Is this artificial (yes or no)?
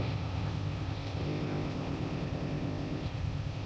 yes